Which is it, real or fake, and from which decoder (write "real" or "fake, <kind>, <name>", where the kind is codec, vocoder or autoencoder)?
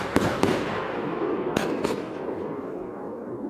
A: fake, codec, DAC